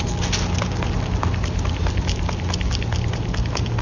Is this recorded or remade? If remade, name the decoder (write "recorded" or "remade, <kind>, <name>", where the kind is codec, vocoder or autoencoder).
recorded